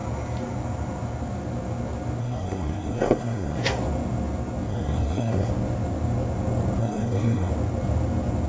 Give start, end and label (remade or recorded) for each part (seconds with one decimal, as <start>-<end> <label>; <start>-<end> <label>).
0.0-2.2 recorded; 2.2-3.7 remade; 3.7-4.7 recorded; 4.7-5.5 remade; 5.5-6.8 recorded; 6.8-7.5 remade; 7.5-8.5 recorded